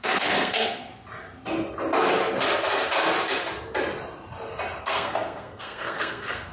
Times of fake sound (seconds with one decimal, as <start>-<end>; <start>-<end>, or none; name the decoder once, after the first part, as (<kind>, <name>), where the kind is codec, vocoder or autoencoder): 0.0-0.9 (codec, SNAC); 4.8-6.5